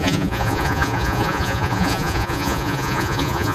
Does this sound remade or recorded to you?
remade